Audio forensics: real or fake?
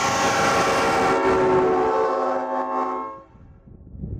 real